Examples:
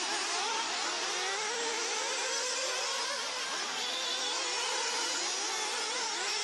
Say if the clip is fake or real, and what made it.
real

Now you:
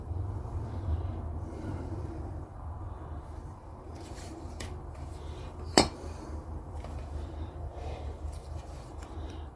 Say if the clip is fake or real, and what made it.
fake, vocoder, BigVGAN v2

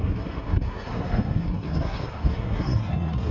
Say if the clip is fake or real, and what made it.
fake, codec, SNAC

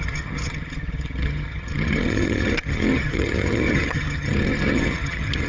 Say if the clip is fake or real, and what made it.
fake, vocoder, HiFi-GAN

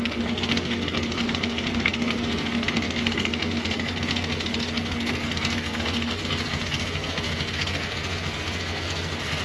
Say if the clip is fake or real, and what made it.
fake, codec, SNAC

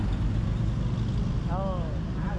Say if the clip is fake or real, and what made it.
real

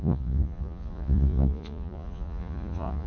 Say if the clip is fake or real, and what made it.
fake, vocoder, Vocos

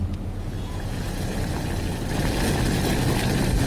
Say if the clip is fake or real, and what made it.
real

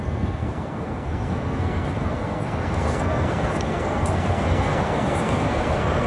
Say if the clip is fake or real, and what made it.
fake, codec, SNAC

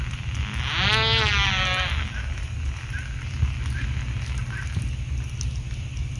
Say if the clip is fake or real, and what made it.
real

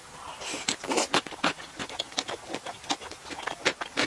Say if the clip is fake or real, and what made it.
real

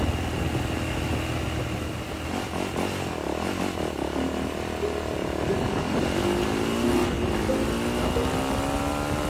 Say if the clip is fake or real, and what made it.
real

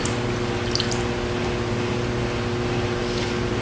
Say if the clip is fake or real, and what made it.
real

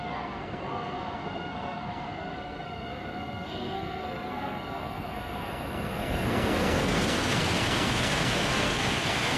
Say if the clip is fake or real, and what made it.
fake, codec, SNAC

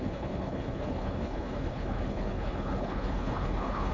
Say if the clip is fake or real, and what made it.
fake, codec, HILCodec